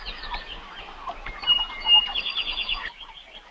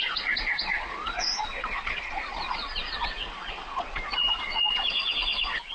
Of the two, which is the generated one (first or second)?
second